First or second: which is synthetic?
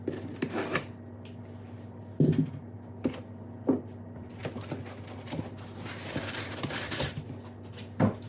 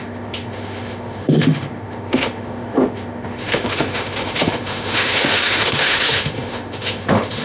second